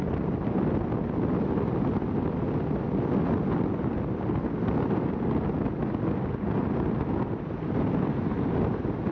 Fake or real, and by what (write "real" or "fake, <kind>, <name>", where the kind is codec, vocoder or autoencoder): real